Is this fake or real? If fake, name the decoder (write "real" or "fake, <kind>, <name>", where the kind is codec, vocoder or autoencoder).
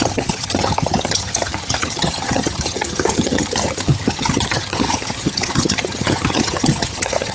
fake, vocoder, HiFi-GAN